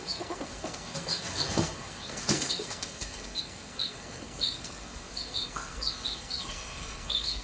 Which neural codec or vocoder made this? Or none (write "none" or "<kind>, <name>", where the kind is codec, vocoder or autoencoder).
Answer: codec, SNAC